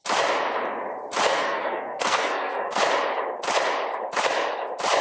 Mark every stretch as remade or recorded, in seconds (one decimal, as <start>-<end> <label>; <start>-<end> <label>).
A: 0.0-1.3 recorded; 1.3-2.8 remade; 2.8-5.0 recorded

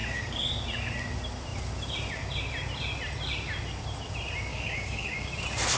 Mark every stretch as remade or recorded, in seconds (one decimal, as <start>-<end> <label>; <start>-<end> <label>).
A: 0.0-0.5 remade; 0.5-4.5 recorded; 4.5-5.3 remade; 5.3-5.8 recorded

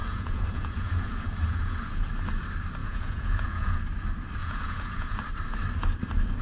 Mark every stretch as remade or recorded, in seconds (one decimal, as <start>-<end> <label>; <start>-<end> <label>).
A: 0.0-2.1 remade; 2.1-2.8 recorded; 2.8-3.8 remade; 3.8-4.4 recorded; 4.4-5.3 remade; 5.3-6.4 recorded

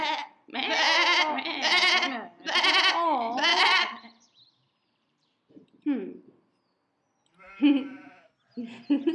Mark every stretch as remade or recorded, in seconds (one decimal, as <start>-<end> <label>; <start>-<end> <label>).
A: 0.0-3.5 recorded; 3.5-5.5 remade; 5.5-9.1 recorded

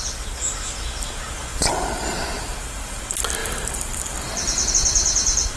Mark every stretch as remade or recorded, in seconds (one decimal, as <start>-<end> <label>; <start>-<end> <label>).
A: 0.0-1.5 recorded; 1.5-3.0 remade; 3.0-3.4 recorded; 3.4-4.7 remade; 4.7-5.6 recorded

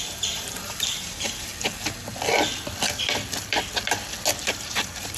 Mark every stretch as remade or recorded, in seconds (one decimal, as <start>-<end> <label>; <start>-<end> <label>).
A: 0.0-1.5 remade; 1.5-4.5 recorded; 4.5-5.2 remade